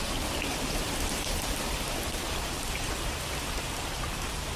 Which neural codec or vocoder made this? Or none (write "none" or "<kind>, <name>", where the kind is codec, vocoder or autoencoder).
none